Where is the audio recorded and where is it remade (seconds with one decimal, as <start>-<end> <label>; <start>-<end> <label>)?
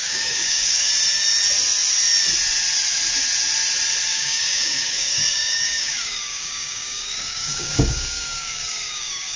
0.0-0.9 remade; 0.9-4.1 recorded; 4.1-9.4 remade